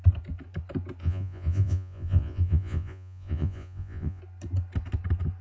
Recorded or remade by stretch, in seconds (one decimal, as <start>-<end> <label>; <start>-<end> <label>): 0.0-1.0 recorded; 1.0-4.2 remade; 4.2-5.4 recorded